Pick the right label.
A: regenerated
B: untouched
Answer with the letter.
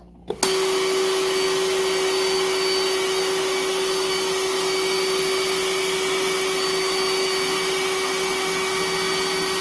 B